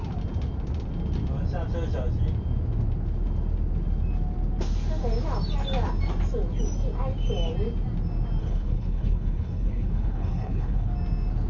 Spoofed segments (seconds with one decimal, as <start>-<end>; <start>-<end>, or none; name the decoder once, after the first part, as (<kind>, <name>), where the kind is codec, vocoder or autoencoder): 8.4-10.9 (codec, HILCodec)

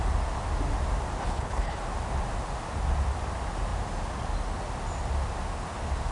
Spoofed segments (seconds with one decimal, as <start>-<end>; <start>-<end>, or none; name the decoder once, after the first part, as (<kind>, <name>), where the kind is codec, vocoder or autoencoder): 1.2-1.8 (codec, HILCodec)

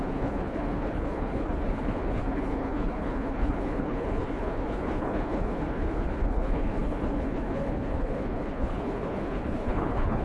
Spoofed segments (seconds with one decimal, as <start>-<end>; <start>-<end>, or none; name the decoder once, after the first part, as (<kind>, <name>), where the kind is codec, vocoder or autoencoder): 0.0-10.2 (codec, HILCodec)

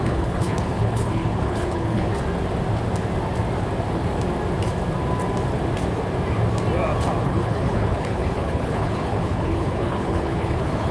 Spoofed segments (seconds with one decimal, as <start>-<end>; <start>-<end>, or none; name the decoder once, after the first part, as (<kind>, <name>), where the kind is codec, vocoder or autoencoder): 0.0-2.1 (codec, HILCodec); 7.2-10.9